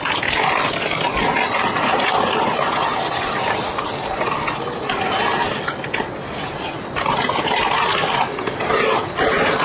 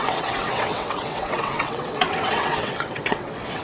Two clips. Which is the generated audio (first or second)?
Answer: second